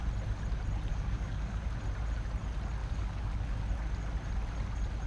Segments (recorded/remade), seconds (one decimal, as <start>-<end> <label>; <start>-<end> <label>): 0.0-0.9 recorded; 0.9-1.6 remade; 1.6-2.8 recorded; 2.8-3.6 remade; 3.6-5.1 recorded